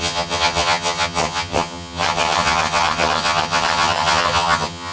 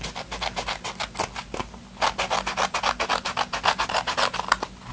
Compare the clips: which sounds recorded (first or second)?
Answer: second